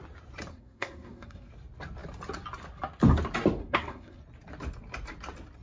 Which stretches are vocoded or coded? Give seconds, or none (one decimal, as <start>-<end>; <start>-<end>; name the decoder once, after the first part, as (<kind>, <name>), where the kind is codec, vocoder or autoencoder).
0.5-1.5 (codec, SNAC); 3.6-4.2